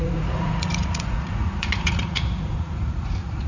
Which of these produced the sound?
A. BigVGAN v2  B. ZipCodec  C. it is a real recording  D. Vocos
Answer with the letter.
D